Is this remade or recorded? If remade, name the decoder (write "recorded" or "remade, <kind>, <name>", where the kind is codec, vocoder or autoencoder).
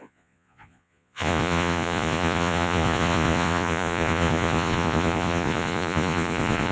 remade, vocoder, Vocos